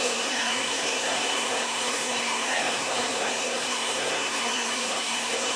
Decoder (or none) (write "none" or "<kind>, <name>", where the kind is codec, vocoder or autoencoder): codec, SNAC